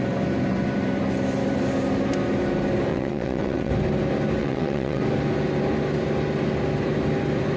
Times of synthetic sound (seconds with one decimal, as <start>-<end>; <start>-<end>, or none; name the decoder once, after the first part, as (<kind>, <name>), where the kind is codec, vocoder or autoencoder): 2.9-3.7 (vocoder, WaveNeXt); 4.4-5.0